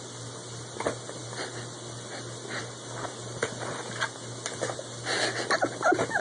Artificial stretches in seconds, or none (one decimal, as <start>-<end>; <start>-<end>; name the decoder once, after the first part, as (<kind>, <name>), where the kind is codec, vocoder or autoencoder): none